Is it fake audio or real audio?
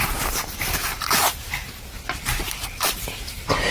fake